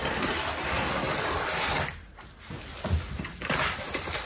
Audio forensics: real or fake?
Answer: real